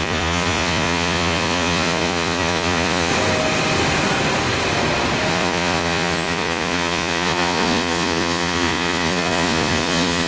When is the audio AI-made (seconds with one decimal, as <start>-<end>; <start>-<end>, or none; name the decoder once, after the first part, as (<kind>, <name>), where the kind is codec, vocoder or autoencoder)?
0.0-3.1 (vocoder, Vocos); 5.3-10.3